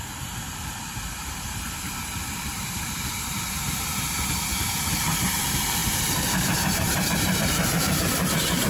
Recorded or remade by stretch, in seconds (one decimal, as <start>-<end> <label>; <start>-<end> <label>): 0.0-8.7 remade